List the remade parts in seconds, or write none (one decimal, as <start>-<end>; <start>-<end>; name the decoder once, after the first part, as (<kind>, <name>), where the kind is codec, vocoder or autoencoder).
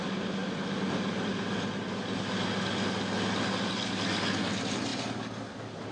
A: none